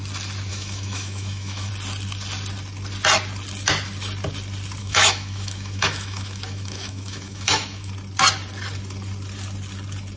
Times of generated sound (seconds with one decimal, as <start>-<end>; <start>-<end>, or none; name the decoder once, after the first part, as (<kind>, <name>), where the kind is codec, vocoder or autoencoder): 0.5-1.7 (autoencoder, DAC-VAE); 4.8-7.9